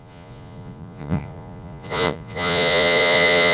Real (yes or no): no